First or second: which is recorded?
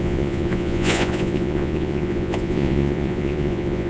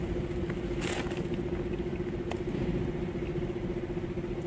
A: second